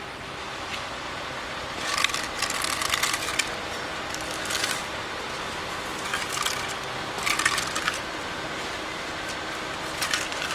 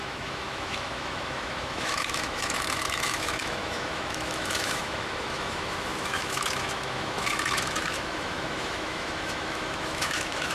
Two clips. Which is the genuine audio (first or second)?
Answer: first